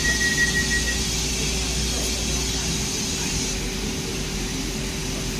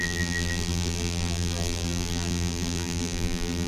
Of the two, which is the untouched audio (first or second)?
first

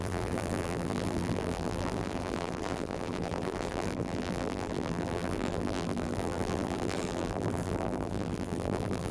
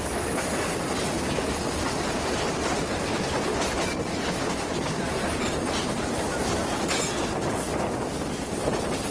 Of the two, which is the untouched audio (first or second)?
second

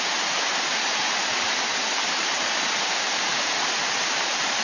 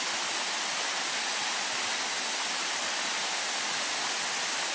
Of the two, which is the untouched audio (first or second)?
second